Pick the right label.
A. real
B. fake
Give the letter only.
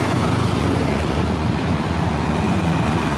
B